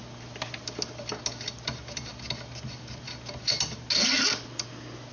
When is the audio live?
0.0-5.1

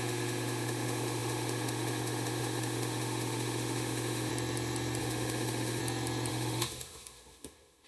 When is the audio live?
4.3-5.0; 5.8-6.3

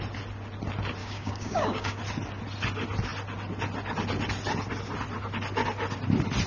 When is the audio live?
0.0-1.0; 2.0-6.5

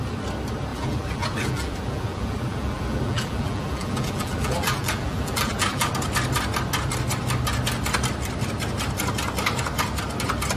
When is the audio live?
0.0-0.7; 5.9-10.6